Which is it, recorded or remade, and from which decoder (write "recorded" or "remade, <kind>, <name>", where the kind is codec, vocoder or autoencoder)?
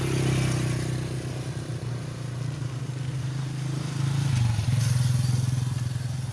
recorded